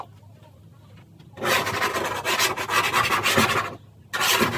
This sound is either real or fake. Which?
real